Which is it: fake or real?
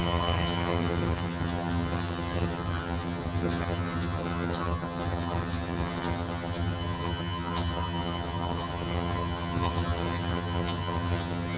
fake